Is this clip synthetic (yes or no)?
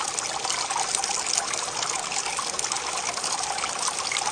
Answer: no